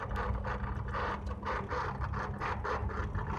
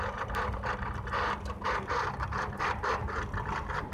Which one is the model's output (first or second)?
second